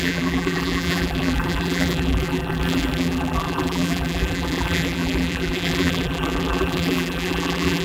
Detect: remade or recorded remade